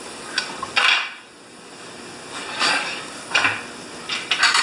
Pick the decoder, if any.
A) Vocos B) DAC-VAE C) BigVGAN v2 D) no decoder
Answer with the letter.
D